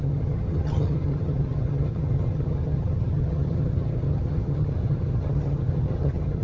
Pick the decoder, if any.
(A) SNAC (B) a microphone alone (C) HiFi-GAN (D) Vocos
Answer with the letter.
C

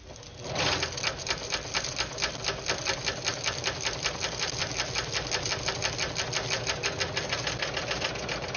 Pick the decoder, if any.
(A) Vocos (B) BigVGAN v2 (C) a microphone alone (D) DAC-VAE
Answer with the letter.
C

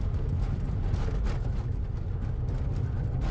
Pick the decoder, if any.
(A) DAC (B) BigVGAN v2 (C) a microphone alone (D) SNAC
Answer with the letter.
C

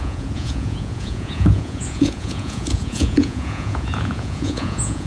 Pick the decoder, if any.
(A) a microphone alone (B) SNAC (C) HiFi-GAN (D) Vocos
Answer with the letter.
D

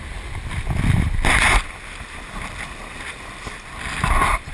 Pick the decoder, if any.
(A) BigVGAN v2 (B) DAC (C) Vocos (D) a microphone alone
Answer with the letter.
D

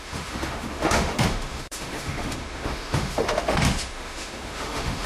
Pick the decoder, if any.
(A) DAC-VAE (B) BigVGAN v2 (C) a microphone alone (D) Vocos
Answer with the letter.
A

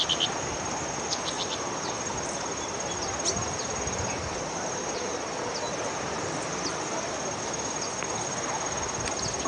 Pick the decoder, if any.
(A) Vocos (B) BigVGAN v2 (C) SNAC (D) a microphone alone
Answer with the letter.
D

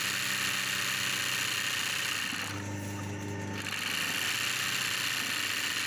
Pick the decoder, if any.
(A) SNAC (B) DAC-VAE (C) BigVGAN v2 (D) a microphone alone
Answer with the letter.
D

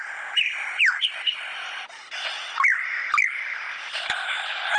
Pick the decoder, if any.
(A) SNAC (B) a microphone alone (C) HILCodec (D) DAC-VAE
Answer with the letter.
B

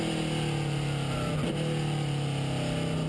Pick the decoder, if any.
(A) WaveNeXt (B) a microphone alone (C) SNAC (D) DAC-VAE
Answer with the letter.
B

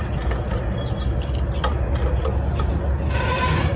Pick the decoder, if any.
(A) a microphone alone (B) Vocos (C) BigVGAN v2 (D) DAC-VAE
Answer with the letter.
A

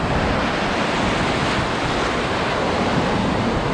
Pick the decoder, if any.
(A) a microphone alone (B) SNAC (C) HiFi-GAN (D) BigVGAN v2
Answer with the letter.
A